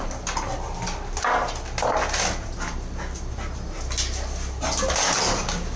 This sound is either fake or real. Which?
real